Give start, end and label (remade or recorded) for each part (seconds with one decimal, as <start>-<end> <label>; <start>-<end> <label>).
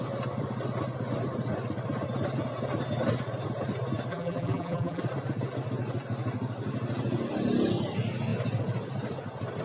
0.0-4.1 recorded; 4.1-5.0 remade; 5.0-9.6 recorded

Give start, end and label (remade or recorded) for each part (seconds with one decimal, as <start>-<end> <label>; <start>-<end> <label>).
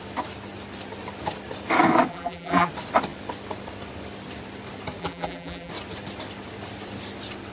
0.0-2.1 recorded; 2.1-2.7 remade; 2.7-5.0 recorded; 5.0-5.7 remade; 5.7-7.5 recorded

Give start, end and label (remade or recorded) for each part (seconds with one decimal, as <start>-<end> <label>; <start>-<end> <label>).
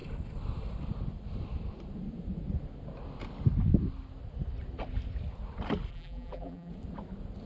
0.0-5.9 recorded; 5.9-6.7 remade; 6.7-7.5 recorded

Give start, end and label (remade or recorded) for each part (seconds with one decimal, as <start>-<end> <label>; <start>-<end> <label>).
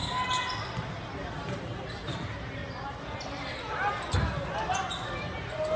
0.0-1.3 recorded; 1.3-2.6 remade; 2.6-5.3 recorded; 5.3-5.8 remade